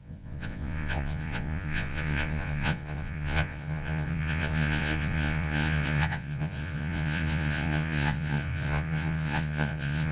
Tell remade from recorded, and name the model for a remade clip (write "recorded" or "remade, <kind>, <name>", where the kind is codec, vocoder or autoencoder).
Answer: remade, vocoder, Vocos